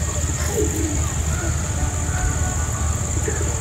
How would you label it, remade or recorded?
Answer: recorded